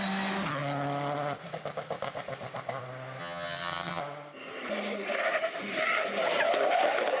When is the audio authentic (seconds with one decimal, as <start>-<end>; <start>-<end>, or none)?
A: 0.0-3.2; 4.0-7.2